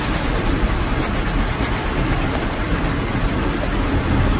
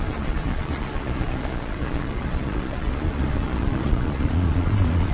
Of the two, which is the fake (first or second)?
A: second